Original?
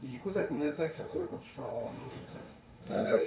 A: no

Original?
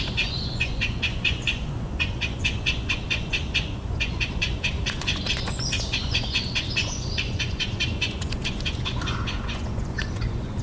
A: no